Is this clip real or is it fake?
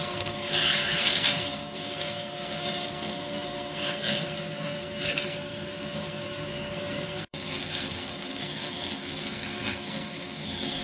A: fake